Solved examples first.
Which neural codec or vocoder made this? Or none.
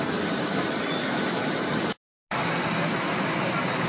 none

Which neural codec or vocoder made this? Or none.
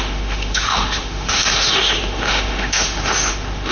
autoencoder, DAC-VAE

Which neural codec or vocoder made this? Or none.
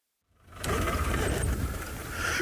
none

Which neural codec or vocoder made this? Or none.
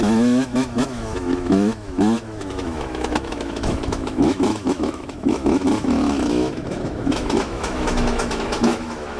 autoencoder, DAC-VAE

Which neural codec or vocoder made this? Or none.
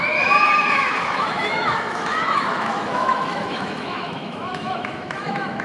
autoencoder, DAC-VAE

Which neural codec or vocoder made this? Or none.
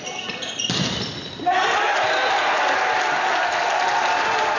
none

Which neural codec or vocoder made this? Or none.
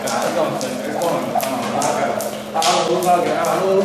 none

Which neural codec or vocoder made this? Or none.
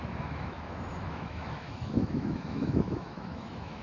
autoencoder, DAC-VAE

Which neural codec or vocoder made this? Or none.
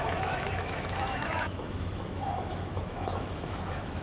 autoencoder, DAC-VAE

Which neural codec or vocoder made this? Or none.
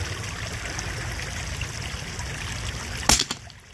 none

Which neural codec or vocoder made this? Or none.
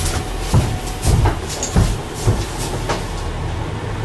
none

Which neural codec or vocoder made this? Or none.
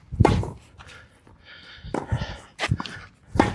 none